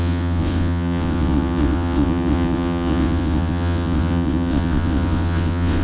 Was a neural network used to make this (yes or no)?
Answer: yes